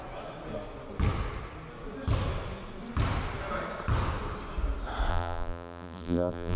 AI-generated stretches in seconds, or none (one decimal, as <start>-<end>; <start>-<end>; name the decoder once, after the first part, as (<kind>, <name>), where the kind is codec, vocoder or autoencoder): 5.1-6.6 (vocoder, BigVGAN v2)